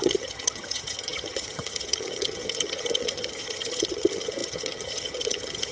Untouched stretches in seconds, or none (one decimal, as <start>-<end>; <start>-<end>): none